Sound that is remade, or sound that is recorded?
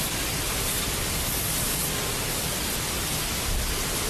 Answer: recorded